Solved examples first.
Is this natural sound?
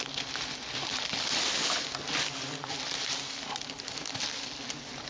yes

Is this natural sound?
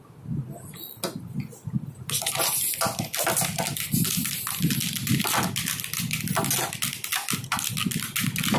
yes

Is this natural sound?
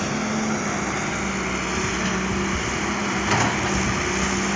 yes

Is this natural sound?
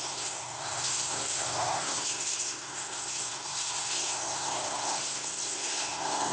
no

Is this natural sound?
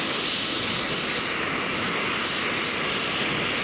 yes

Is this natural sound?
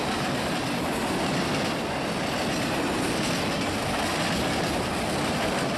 yes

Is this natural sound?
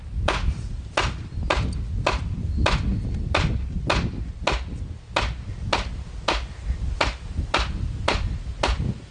yes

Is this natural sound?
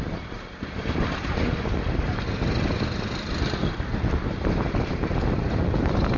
yes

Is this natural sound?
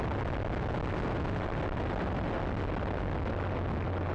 yes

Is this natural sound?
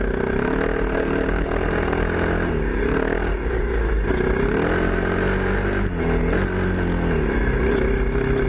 yes